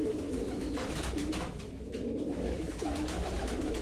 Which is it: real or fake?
fake